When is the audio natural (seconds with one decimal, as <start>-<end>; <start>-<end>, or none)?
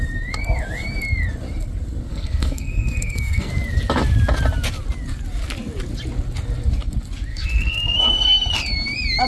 0.0-2.1; 3.5-7.3; 8.5-9.3